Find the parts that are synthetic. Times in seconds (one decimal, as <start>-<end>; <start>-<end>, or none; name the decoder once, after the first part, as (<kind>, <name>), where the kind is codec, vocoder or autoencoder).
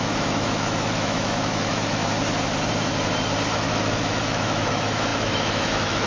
0.0-2.0 (autoencoder, DAC-VAE); 3.5-6.1